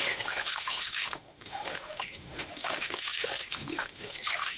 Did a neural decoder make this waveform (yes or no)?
yes